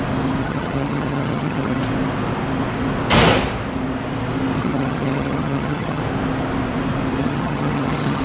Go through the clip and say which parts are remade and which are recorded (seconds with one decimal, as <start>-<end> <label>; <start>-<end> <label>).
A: 0.0-0.4 recorded; 0.4-1.8 remade; 1.8-4.6 recorded; 4.6-6.0 remade; 6.0-7.2 recorded; 7.2-8.2 remade